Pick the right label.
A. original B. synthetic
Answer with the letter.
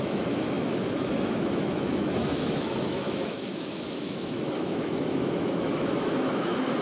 B